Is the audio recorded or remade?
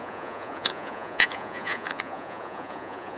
remade